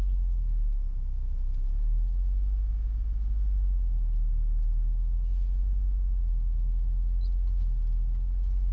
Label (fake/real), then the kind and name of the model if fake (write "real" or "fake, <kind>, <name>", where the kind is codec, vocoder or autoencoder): real